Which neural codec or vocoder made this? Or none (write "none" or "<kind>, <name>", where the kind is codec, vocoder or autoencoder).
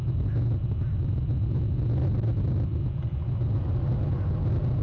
none